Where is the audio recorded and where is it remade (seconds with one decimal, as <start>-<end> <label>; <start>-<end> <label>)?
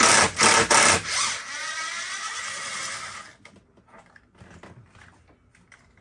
0.0-6.0 recorded